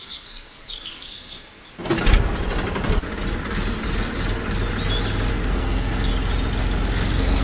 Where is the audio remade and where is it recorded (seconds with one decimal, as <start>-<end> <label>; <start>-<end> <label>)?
0.0-1.6 remade; 1.6-5.3 recorded; 5.3-6.1 remade; 6.1-6.9 recorded; 6.9-7.4 remade